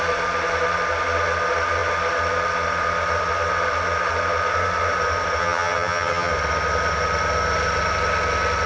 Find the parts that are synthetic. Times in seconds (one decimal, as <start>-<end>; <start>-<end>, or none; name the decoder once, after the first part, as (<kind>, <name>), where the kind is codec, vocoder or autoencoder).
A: 5.4-6.3 (vocoder, HiFi-GAN)